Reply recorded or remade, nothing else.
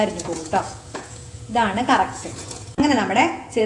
remade